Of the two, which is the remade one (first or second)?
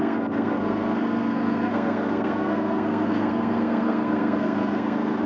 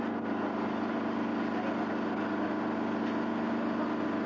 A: first